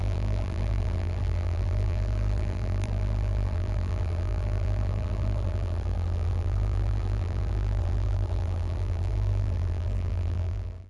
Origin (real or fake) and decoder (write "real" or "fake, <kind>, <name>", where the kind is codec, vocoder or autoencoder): fake, vocoder, BigVGAN v2